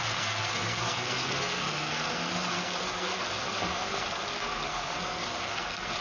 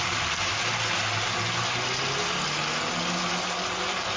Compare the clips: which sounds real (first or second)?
second